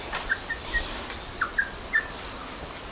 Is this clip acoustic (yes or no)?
yes